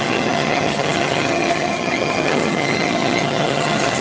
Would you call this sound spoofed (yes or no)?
yes